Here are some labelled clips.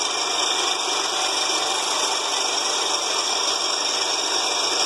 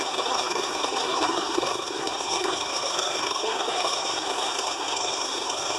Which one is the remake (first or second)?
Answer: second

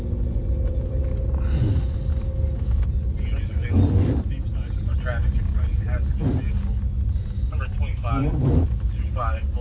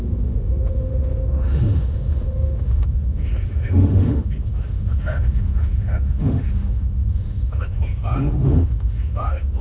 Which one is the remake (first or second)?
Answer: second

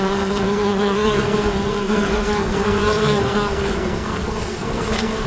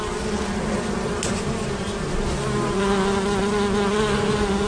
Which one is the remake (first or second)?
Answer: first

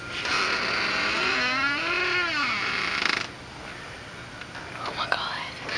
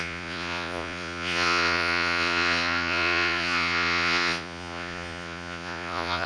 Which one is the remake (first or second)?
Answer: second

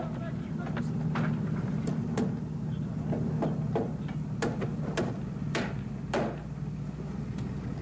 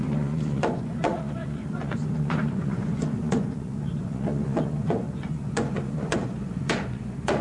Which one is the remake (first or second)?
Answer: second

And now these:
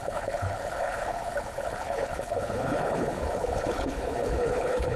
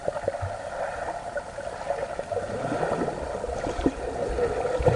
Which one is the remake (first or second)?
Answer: first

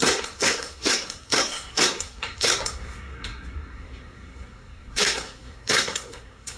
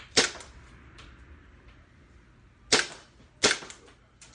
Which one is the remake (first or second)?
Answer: first